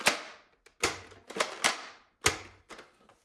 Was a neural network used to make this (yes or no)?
no